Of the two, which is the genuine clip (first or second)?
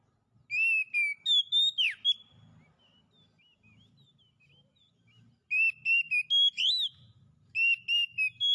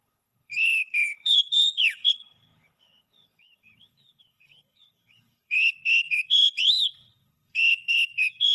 first